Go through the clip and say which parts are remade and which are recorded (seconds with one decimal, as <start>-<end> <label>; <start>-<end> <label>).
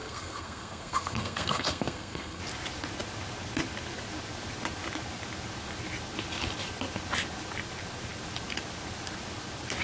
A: 0.0-2.4 remade; 2.4-9.8 recorded